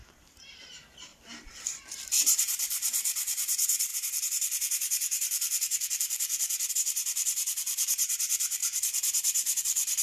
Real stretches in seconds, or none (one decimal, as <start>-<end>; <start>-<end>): none